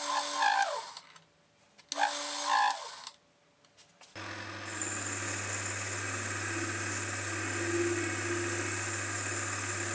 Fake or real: real